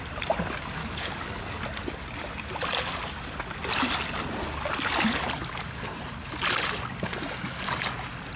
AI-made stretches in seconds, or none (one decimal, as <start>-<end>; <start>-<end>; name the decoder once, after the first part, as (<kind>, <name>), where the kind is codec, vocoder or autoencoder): 0.8-1.6 (codec, DAC)